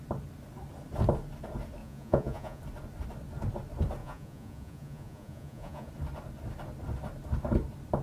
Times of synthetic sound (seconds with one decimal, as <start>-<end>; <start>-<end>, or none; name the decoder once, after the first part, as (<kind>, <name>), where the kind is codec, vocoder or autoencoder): 1.8-2.6 (vocoder, Vocos); 4.0-5.9